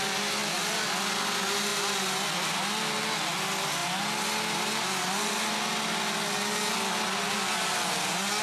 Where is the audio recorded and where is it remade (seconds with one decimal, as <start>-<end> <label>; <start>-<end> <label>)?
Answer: 0.0-8.4 recorded